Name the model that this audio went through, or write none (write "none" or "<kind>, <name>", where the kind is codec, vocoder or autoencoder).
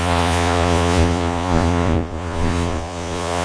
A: vocoder, Vocos